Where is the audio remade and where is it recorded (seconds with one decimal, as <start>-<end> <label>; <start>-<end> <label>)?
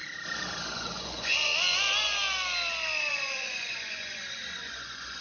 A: 0.0-0.7 recorded; 0.7-1.5 remade; 1.5-3.1 recorded; 3.1-5.2 remade